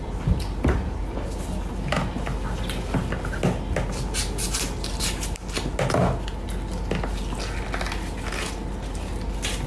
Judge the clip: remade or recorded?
recorded